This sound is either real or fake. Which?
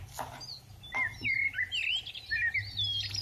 real